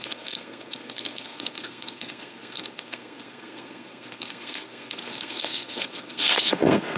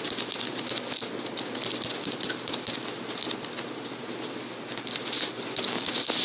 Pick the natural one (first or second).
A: second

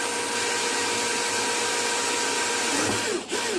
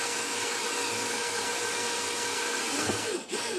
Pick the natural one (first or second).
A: first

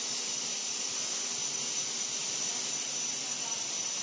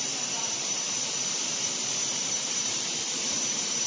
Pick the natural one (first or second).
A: first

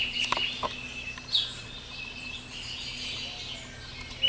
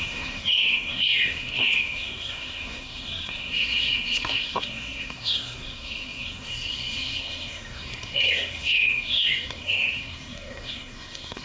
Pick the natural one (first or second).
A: first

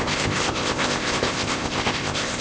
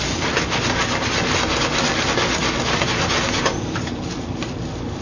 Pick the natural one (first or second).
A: second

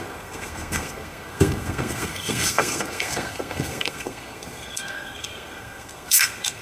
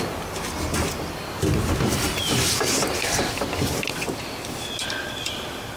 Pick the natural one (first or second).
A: second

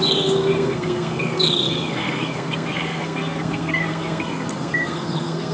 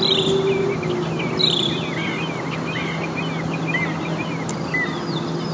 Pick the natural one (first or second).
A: second